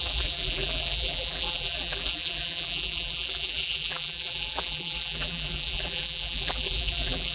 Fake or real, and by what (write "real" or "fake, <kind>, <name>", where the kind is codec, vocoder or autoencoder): fake, vocoder, BigVGAN v2